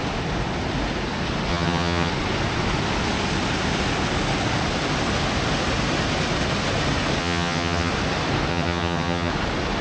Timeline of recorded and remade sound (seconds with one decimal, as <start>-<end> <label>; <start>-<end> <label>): 0.0-1.5 recorded; 1.5-2.1 remade; 2.1-7.2 recorded; 7.2-7.9 remade; 7.9-8.5 recorded; 8.5-9.3 remade; 9.3-9.8 recorded